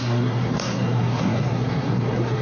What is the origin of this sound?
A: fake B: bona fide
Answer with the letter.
A